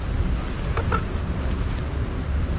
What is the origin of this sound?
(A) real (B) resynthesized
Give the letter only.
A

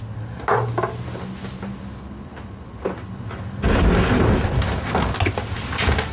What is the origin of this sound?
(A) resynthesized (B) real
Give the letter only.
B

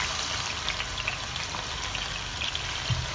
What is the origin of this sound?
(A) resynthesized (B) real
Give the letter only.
B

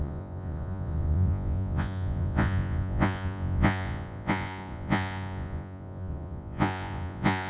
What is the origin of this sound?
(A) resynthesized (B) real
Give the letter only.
A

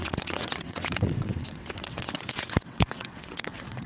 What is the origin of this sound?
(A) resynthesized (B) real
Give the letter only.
A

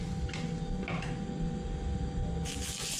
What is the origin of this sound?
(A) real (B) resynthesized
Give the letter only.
A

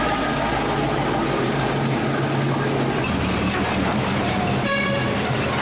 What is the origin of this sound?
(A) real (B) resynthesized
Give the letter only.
A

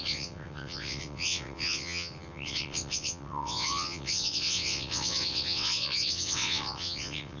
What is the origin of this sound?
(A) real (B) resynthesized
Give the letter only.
B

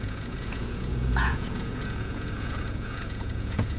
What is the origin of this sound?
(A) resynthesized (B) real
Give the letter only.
A